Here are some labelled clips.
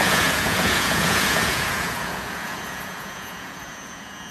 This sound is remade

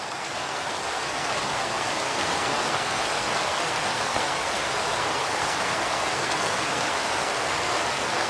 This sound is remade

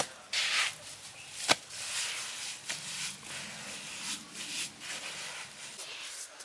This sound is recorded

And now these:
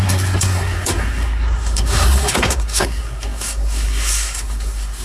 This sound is remade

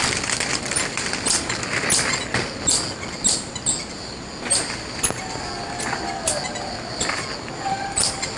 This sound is recorded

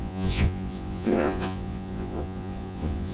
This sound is remade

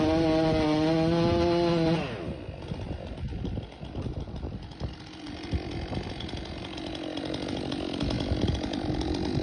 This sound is recorded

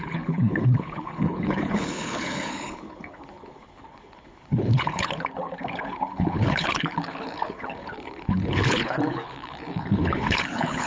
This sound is remade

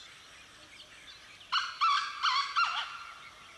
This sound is recorded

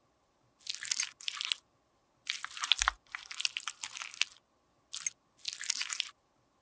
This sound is recorded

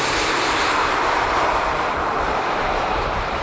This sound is remade